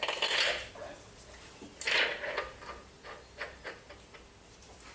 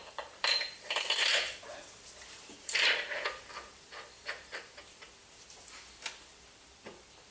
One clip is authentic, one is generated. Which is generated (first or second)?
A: second